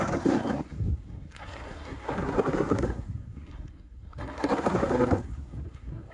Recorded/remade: remade